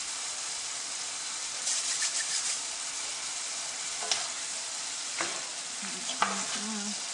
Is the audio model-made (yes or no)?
yes